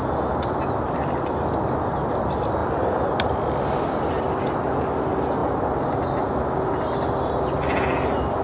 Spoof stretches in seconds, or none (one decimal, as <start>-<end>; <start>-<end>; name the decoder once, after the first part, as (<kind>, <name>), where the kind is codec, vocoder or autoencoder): none